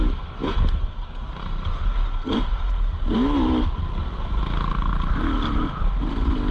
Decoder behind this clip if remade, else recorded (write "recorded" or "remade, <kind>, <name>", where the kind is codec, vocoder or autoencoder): recorded